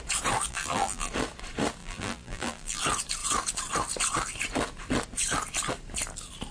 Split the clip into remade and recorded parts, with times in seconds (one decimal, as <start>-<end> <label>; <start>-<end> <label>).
0.0-0.5 recorded; 0.5-1.1 remade; 1.1-1.8 recorded; 1.8-2.8 remade; 2.8-6.5 recorded